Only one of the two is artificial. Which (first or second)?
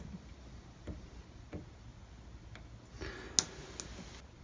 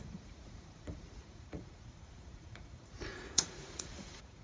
second